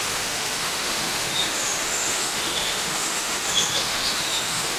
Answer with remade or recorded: remade